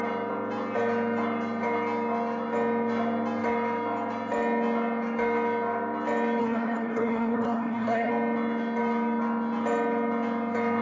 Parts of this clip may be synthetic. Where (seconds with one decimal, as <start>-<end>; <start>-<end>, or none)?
6.4-8.1